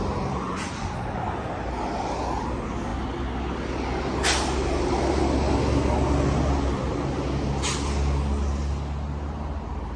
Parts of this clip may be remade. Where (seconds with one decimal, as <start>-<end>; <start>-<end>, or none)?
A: none

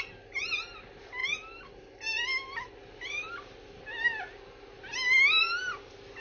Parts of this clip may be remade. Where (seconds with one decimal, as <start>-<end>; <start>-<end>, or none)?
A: none

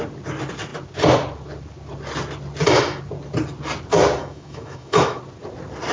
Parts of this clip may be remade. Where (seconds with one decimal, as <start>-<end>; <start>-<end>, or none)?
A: 4.2-5.2

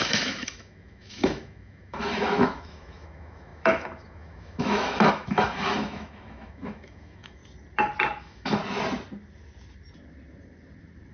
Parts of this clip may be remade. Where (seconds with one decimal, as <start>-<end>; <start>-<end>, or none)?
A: 0.0-7.4; 8.2-8.6